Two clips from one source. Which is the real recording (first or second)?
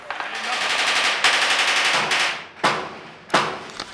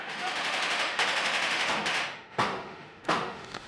first